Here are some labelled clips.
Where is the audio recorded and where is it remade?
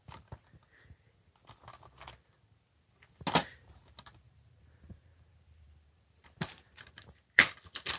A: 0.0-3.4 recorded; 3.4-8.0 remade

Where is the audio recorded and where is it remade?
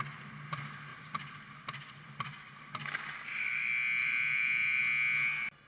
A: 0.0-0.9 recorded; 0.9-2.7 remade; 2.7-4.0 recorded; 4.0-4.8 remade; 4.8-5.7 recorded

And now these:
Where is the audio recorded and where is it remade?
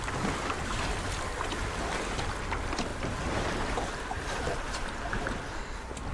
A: 0.0-2.9 recorded; 2.9-5.1 remade; 5.1-6.1 recorded